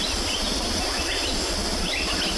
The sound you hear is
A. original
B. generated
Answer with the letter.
A